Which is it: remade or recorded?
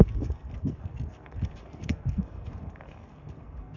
remade